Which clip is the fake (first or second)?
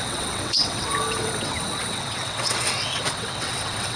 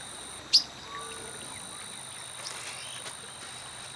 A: first